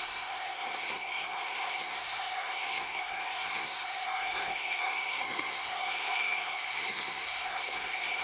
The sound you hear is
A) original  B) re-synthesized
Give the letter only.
B